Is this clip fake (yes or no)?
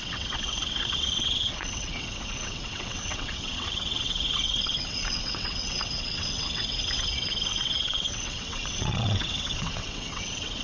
yes